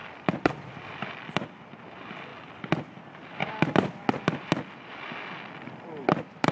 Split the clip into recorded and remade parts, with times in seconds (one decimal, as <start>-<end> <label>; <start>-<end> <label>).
0.0-0.5 remade; 0.5-6.5 recorded